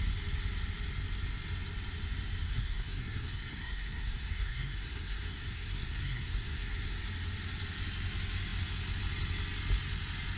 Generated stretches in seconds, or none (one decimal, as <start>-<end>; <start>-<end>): 2.4-7.0

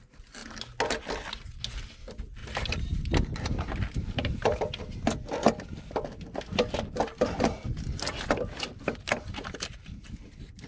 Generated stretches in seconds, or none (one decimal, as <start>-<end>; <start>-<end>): 2.4-4.6; 9.0-10.7

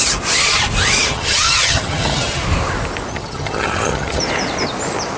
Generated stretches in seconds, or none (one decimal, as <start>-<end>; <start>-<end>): 1.1-2.4; 3.1-4.2

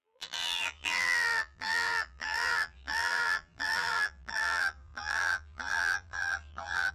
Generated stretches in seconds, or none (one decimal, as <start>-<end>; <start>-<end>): 0.0-6.9